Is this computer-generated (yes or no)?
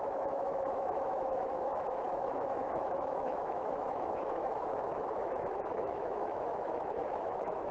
yes